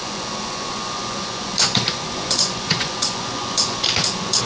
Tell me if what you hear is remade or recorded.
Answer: remade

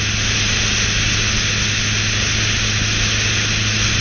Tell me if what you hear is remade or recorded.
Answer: recorded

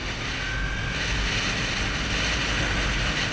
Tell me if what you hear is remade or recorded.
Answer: recorded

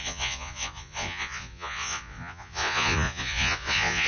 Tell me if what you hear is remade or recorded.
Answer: remade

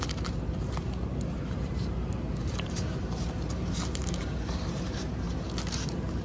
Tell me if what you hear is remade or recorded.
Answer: remade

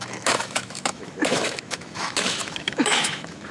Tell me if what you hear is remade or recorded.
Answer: remade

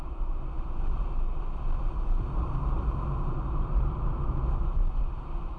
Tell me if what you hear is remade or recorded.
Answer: recorded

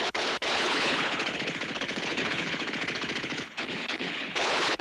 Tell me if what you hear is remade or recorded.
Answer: remade